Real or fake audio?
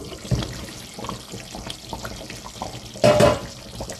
real